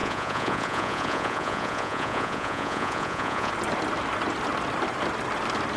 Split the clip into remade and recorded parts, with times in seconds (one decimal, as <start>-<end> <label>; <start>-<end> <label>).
0.0-3.5 remade; 3.5-5.8 recorded